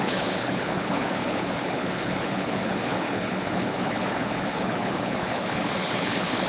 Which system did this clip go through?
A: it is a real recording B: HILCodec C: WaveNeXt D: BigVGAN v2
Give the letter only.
B